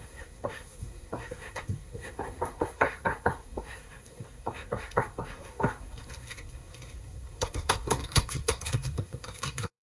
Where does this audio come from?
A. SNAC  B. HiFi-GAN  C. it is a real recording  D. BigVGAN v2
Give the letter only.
A